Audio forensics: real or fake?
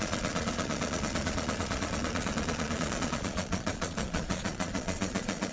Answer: fake